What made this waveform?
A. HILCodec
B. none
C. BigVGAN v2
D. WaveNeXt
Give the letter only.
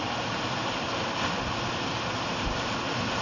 B